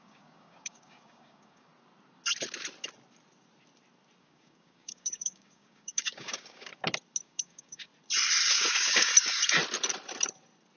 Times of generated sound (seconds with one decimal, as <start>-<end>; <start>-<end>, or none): 0.0-1.7; 4.2-6.7; 7.2-7.9; 8.5-9.1